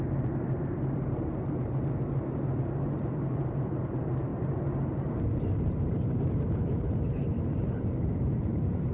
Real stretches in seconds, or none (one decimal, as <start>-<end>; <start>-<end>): 4.3-5.4